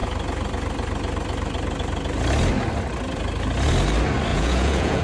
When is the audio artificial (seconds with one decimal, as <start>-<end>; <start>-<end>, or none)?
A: 4.3-5.0